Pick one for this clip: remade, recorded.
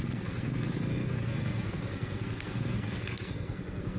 remade